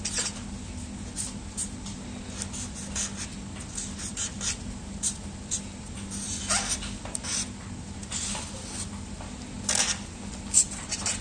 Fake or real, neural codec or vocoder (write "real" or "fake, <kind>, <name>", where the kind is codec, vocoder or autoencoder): real